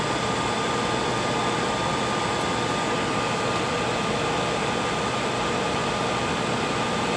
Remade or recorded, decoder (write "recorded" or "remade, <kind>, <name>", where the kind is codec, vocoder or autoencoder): recorded